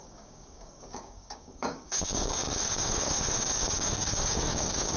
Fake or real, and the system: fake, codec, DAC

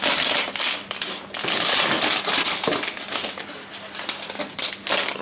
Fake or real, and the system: real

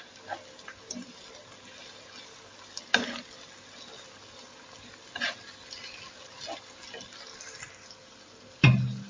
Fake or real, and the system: real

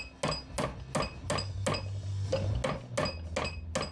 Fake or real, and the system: real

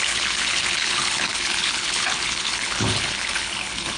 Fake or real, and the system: fake, codec, HILCodec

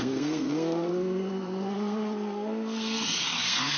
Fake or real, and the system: fake, codec, SNAC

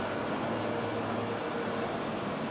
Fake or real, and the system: real